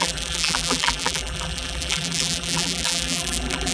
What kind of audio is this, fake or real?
fake